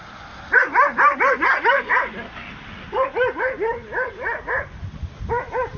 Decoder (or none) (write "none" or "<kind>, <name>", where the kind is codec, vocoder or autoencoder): none